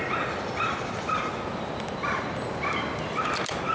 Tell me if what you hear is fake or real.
real